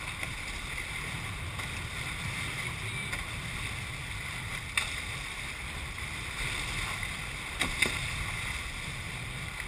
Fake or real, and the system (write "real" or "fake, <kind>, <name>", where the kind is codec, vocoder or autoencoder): real